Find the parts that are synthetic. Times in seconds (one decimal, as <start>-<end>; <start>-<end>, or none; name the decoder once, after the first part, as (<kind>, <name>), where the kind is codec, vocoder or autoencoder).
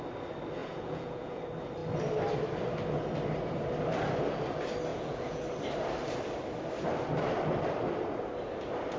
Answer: 0.6-1.4 (vocoder, Vocos); 4.9-5.4